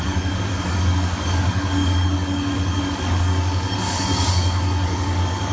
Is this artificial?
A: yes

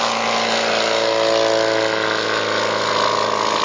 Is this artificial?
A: no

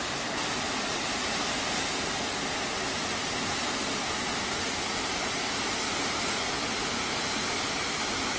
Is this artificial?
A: no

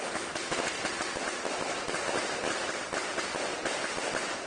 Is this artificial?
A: no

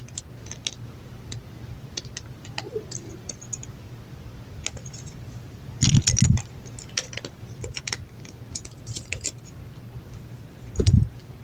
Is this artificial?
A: no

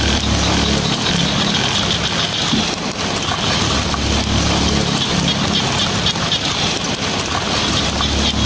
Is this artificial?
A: no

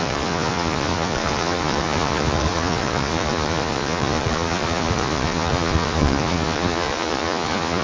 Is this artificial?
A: yes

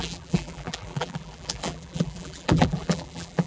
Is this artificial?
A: yes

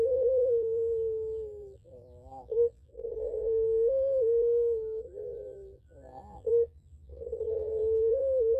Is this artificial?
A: yes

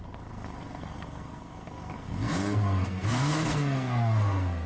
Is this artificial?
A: yes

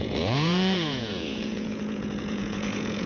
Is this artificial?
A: yes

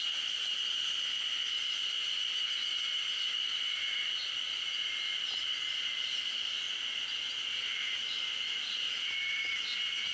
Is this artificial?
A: no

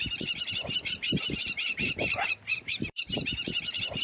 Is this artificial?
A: yes